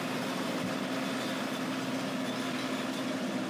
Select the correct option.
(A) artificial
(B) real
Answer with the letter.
B